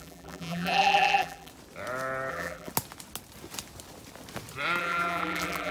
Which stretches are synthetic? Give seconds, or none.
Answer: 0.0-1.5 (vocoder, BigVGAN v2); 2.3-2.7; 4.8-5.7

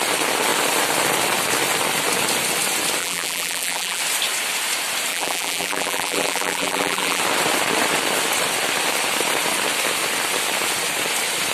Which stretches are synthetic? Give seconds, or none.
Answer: 3.0-4.0 (vocoder, BigVGAN v2); 5.1-7.2

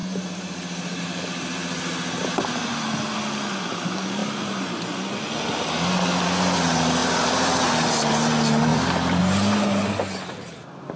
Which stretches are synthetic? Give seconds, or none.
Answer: 0.0-1.0 (vocoder, BigVGAN v2); 7.0-7.7; 8.7-9.2

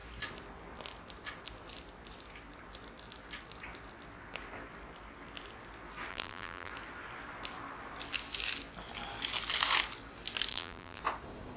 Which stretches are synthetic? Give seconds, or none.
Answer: 6.1-6.7 (vocoder, BigVGAN v2); 10.5-11.0

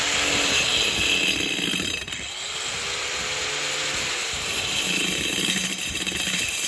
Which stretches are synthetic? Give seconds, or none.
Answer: 3.4-6.7 (vocoder, BigVGAN v2)

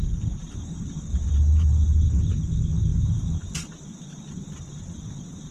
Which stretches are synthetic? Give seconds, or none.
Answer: 2.9-5.5 (vocoder, BigVGAN v2)